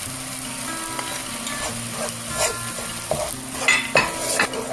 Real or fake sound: real